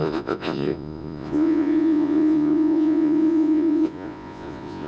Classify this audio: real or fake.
fake